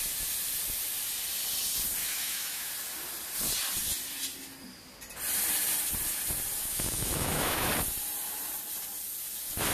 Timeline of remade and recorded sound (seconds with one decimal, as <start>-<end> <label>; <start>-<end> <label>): 0.0-2.0 recorded; 2.0-2.7 remade; 2.7-6.6 recorded; 6.6-7.7 remade; 7.7-9.7 recorded

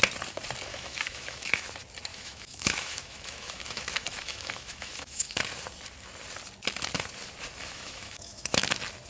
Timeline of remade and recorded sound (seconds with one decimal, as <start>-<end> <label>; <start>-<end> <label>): 0.0-0.7 recorded; 0.7-1.7 remade; 1.7-2.1 recorded; 2.1-5.4 remade; 5.4-7.6 recorded; 7.6-8.6 remade; 8.6-9.1 recorded